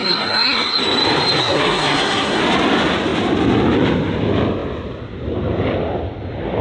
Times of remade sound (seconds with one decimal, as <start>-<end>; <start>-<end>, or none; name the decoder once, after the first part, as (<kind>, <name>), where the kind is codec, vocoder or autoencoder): 0.0-0.8 (codec, SNAC); 1.4-2.4